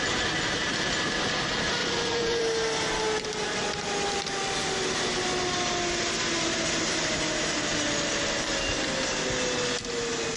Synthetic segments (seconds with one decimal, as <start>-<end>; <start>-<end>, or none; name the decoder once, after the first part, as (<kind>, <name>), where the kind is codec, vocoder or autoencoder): 1.8-2.4 (vocoder, Vocos)